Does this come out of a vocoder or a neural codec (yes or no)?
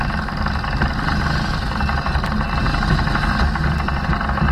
no